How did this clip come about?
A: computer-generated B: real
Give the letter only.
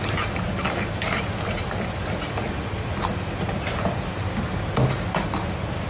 B